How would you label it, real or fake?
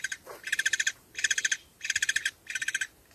fake